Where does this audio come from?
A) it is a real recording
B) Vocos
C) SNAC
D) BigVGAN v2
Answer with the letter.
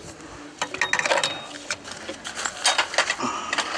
A